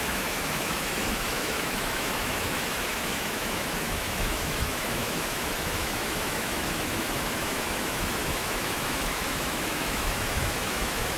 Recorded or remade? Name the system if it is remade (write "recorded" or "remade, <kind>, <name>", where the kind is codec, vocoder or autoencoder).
remade, autoencoder, DAC-VAE